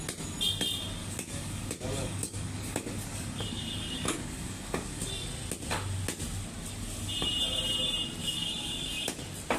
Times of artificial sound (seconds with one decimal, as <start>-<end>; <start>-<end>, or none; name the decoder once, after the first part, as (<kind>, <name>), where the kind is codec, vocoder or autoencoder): 1.0-5.1 (codec, DAC); 8.2-9.2